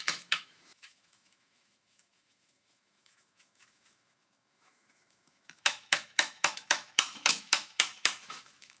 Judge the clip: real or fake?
fake